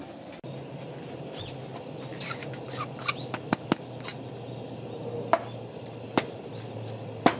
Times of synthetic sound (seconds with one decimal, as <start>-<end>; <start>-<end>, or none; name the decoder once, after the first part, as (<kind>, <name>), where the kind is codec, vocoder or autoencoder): 2.1-3.0 (vocoder, BigVGAN v2)